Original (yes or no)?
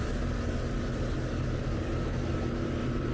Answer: yes